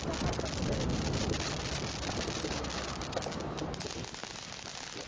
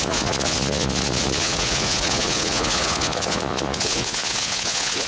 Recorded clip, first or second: first